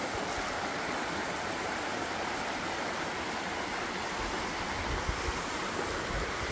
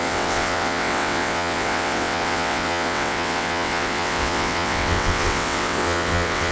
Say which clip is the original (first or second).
first